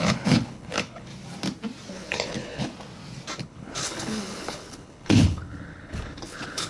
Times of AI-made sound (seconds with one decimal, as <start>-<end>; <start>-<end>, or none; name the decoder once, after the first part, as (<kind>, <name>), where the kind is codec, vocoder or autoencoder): 0.0-1.1 (codec, HILCodec); 1.9-2.7; 3.4-6.7